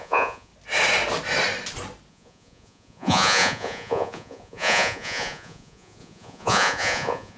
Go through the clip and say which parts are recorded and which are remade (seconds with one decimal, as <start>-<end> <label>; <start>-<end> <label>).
0.0-0.5 remade; 0.5-2.1 recorded; 2.1-7.4 remade